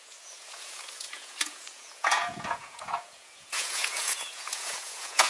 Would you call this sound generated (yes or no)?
yes